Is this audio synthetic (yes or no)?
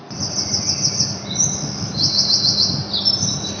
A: no